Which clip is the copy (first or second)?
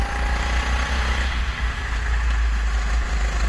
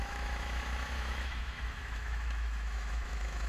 second